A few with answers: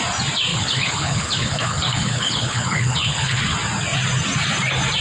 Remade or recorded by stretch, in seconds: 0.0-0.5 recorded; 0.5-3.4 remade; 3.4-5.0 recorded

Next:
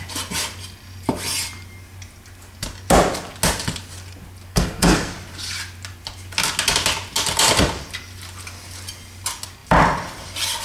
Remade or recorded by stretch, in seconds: 0.0-4.5 recorded; 4.5-5.1 remade; 5.1-10.6 recorded

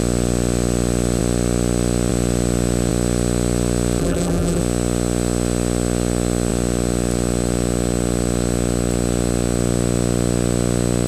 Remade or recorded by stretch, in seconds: 0.0-4.0 recorded; 4.0-4.6 remade; 4.6-11.1 recorded

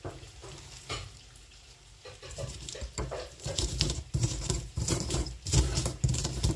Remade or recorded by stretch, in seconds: 0.0-6.6 remade

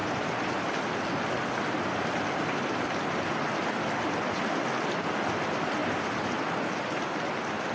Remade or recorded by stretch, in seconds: 0.0-5.8 recorded; 5.8-6.4 remade; 6.4-7.7 recorded